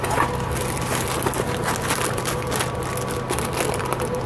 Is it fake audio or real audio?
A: real